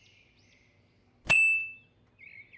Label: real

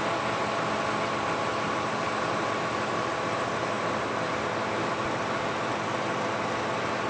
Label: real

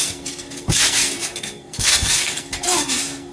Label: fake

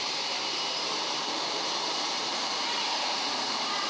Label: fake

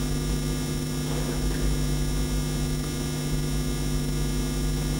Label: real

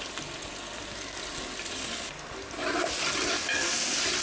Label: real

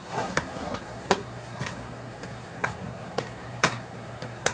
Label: fake